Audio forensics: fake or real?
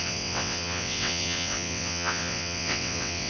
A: fake